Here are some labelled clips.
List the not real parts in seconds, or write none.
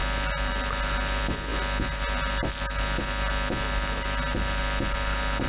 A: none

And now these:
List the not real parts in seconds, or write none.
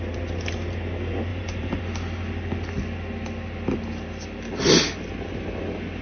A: 1.3-1.8 (vocoder, BigVGAN v2)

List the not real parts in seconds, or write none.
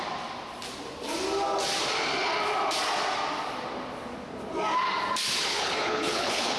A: 5.5-6.6 (codec, HILCodec)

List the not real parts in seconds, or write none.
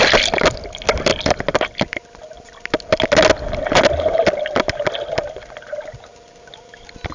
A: none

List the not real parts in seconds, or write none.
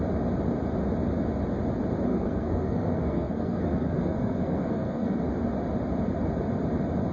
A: 2.1-5.3 (codec, SNAC)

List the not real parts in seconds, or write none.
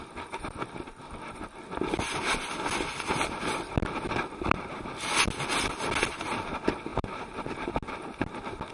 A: 6.9-7.7 (vocoder, BigVGAN v2)